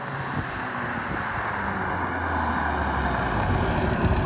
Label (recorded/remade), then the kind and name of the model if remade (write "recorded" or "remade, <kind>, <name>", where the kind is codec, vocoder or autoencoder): recorded